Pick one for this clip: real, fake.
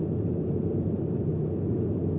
real